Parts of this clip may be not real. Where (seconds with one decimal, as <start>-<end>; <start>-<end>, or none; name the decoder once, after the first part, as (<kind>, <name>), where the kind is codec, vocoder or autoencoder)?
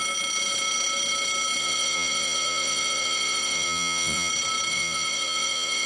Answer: 1.6-4.3 (vocoder, Vocos); 4.7-5.9